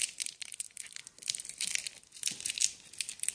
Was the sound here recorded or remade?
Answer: recorded